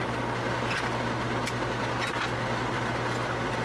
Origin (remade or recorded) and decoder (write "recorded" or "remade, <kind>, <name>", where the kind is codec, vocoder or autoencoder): recorded